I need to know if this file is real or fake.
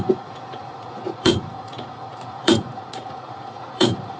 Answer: fake